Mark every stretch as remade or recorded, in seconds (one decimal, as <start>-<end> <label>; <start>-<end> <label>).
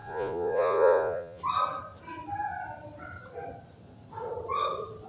0.0-1.4 remade; 1.4-5.1 recorded